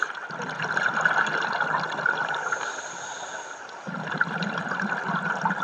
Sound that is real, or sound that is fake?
real